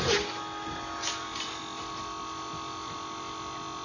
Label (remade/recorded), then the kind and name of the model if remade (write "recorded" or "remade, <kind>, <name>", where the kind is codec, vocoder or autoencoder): recorded